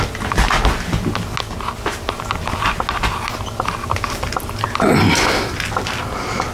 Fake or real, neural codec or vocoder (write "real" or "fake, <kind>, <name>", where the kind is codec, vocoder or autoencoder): real